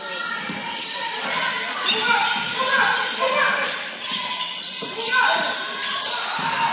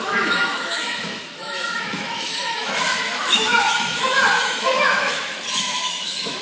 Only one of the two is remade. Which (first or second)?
second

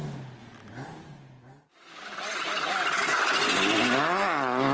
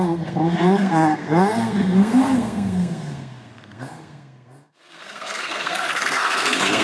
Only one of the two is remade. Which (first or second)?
second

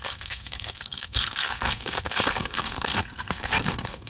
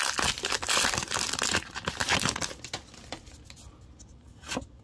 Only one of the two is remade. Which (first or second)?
first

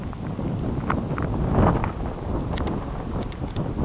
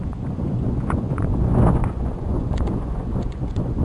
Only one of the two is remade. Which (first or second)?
second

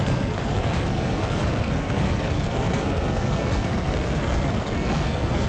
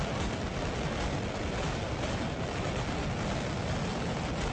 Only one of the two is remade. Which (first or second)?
first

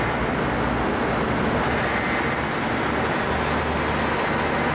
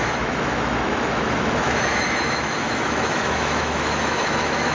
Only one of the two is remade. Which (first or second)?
second